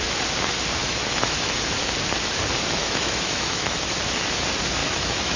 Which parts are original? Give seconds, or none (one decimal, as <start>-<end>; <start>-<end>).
0.0-0.8; 1.6-2.8; 3.9-4.8